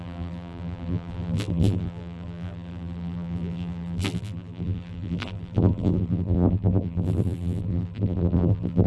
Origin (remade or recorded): remade